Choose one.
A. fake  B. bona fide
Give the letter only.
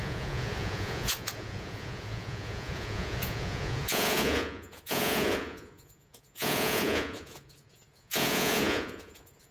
A